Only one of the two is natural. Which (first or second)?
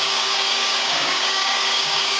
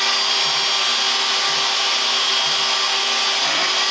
second